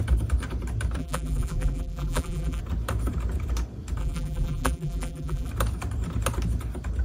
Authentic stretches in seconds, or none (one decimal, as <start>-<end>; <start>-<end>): 0.0-1.0; 2.6-4.0; 5.5-7.0